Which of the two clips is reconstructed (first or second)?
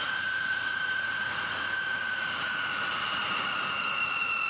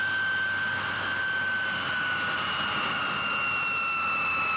first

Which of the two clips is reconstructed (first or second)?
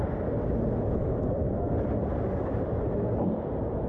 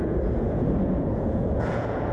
second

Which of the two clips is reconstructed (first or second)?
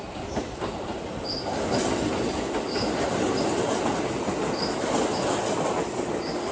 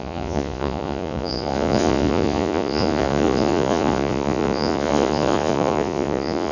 second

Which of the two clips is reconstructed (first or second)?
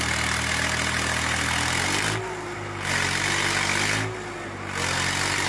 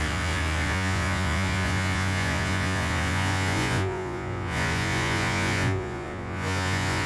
second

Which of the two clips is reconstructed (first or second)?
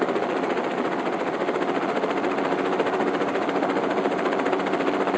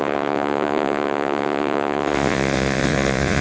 second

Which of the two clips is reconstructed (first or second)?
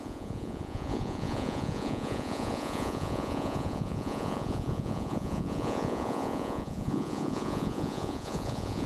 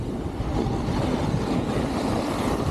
first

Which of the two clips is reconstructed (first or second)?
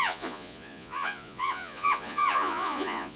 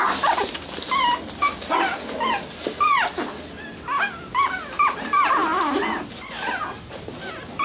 first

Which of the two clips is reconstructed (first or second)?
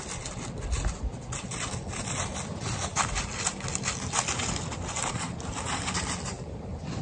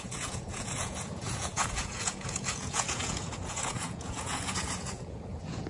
second